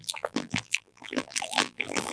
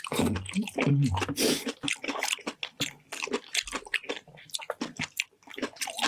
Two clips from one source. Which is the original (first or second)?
second